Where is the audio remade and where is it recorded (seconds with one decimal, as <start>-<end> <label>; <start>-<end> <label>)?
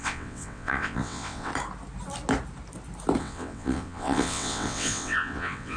0.0-1.5 remade; 1.5-3.2 recorded; 3.2-5.8 remade